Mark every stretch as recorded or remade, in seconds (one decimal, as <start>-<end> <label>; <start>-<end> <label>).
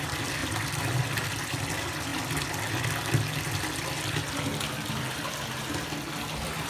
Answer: 0.0-6.7 recorded